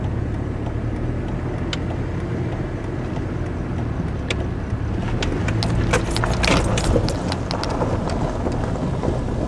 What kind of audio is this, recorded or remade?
recorded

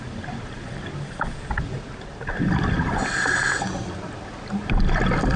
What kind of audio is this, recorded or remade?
recorded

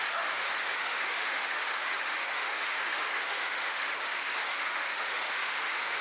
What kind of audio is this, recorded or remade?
remade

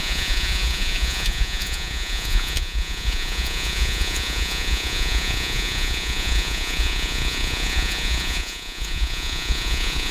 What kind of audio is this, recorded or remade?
remade